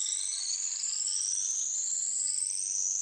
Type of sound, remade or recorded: recorded